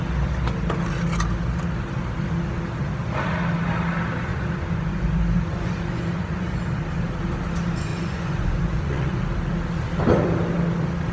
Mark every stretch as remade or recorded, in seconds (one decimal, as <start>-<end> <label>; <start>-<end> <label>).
0.0-4.3 recorded; 4.3-6.6 remade; 6.6-7.9 recorded; 7.9-9.2 remade; 9.2-11.1 recorded